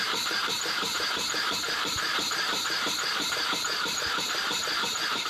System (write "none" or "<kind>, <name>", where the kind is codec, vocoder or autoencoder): vocoder, BigVGAN v2